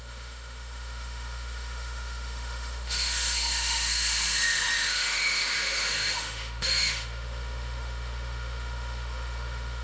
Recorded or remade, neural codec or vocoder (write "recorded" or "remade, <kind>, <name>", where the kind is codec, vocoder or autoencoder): remade, autoencoder, DAC-VAE